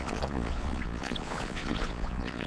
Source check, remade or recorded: remade